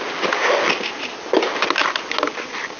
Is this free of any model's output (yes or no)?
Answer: yes